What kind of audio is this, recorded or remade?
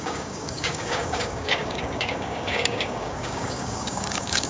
remade